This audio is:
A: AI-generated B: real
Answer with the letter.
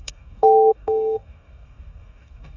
A